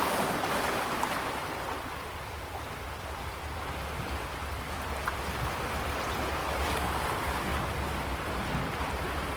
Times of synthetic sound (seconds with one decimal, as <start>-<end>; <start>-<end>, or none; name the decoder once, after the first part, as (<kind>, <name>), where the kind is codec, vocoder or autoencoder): 6.4-7.0 (codec, DAC)